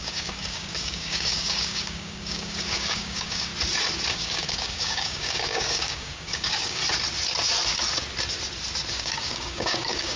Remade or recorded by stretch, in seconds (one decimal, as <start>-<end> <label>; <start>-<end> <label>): 0.0-3.5 remade; 3.5-4.1 recorded; 4.1-6.8 remade; 6.8-8.9 recorded; 8.9-10.2 remade